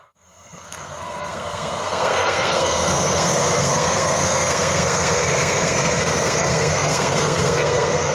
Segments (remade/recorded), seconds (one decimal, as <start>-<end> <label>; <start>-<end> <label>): 0.0-8.1 remade